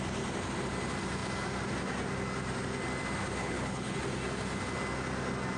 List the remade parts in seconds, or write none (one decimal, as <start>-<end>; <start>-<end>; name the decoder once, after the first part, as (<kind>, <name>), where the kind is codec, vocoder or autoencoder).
3.4-4.0 (codec, HILCodec)